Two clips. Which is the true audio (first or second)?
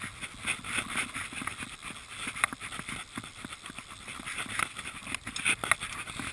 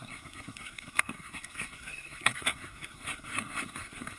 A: first